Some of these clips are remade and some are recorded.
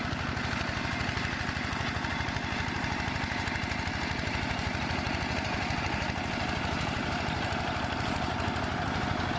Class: recorded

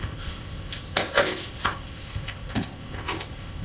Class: remade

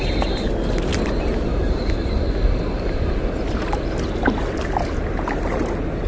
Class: recorded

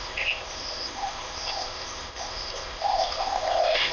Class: remade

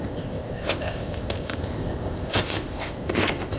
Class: remade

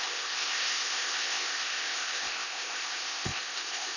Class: remade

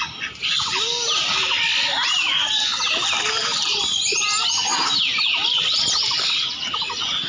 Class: recorded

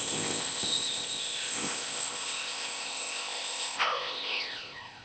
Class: remade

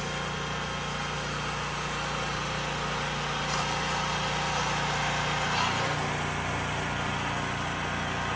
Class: recorded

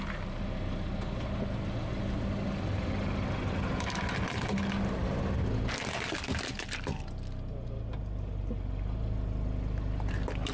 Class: recorded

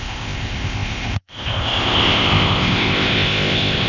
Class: remade